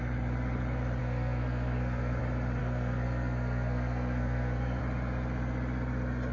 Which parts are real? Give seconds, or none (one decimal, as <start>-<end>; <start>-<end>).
0.0-1.0; 2.2-2.6; 4.8-6.3